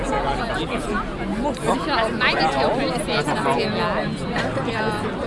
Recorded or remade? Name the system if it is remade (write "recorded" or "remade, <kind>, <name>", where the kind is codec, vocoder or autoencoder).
recorded